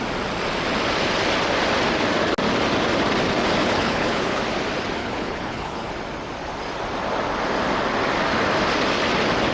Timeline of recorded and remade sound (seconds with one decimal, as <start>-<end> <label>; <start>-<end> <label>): 0.0-3.6 recorded; 3.6-4.4 remade; 4.4-5.0 recorded; 5.0-5.9 remade; 5.9-9.5 recorded